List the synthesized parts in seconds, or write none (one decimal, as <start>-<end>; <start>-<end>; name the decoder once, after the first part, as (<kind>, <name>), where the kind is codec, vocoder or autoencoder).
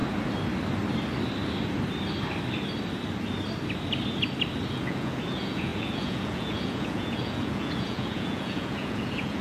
4.7-9.4 (vocoder, Vocos)